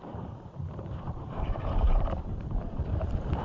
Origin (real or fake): fake